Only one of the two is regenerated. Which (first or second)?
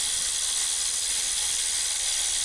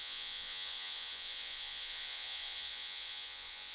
second